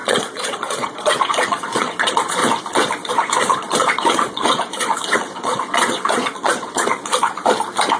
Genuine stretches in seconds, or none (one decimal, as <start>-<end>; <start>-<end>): 2.4-3.1; 6.9-8.0